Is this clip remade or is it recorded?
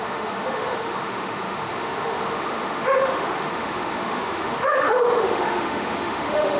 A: remade